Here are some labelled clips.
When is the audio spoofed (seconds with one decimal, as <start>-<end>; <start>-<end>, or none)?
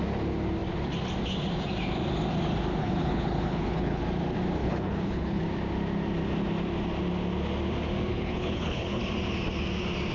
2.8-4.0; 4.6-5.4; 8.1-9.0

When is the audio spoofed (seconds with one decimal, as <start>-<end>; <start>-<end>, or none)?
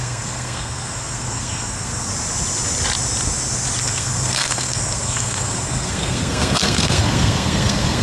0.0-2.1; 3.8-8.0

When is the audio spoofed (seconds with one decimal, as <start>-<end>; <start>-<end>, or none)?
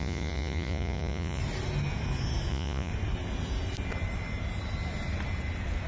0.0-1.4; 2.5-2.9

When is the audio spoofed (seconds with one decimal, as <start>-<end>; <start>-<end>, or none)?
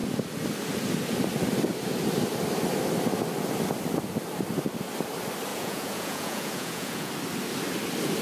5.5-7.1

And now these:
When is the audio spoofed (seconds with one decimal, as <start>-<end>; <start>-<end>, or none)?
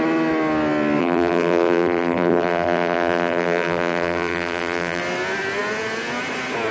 1.0-5.0